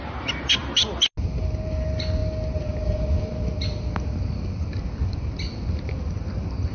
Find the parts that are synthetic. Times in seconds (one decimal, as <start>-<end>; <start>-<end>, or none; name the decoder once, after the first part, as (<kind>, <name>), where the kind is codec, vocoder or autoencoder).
none